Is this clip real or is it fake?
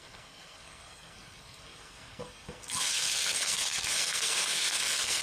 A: fake